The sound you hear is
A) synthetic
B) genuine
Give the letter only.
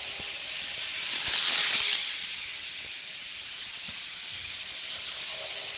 B